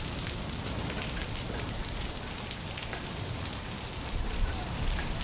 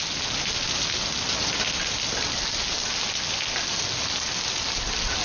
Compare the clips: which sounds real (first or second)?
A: second